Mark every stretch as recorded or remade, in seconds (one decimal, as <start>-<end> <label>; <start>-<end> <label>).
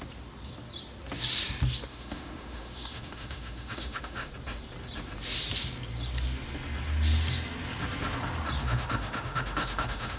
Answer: 0.0-1.9 recorded; 1.9-4.3 remade; 4.3-8.6 recorded; 8.6-10.2 remade